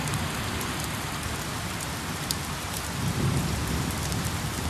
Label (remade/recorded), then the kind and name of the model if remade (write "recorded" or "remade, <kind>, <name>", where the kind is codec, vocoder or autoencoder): remade, vocoder, BigVGAN v2